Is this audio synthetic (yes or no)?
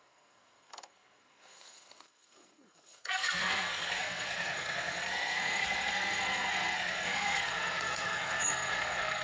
yes